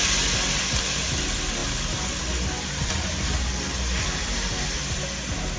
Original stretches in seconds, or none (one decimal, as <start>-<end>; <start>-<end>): 0.0-5.6